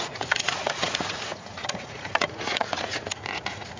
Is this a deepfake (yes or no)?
yes